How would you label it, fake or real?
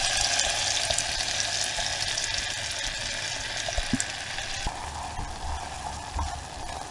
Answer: real